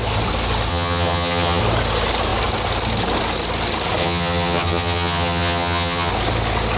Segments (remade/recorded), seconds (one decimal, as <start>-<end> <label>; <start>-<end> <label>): 0.0-0.7 recorded; 0.7-1.6 remade; 1.6-4.0 recorded; 4.0-6.1 remade; 6.1-6.8 recorded

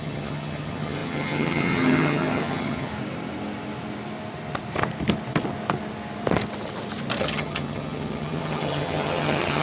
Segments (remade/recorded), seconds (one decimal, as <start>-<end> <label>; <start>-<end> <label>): 0.0-2.9 remade; 2.9-7.2 recorded; 7.2-9.6 remade

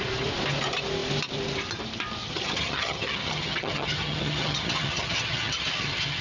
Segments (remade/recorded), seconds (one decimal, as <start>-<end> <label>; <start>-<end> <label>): 0.0-2.2 recorded; 2.2-6.2 remade

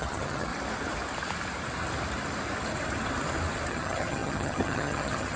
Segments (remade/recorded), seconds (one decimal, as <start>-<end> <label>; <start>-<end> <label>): 0.0-0.5 remade; 0.5-3.7 recorded; 3.7-5.4 remade

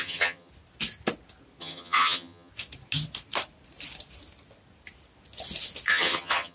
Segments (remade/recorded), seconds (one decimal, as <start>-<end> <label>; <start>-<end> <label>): 0.0-0.5 remade; 0.5-1.6 recorded; 1.6-2.5 remade; 2.5-5.9 recorded; 5.9-6.5 remade